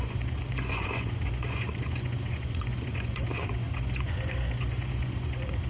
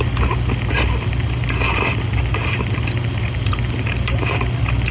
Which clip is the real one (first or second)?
second